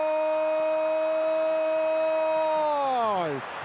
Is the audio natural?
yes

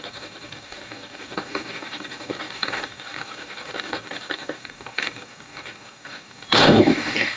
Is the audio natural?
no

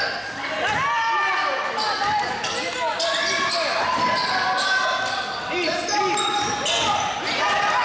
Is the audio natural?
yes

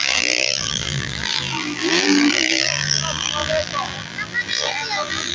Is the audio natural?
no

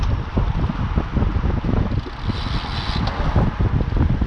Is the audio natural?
yes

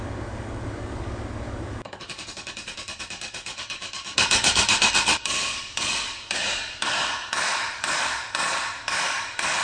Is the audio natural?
no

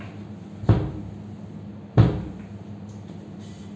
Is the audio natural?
yes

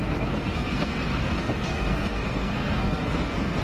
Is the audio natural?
no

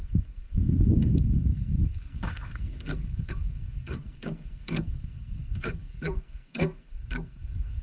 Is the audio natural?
no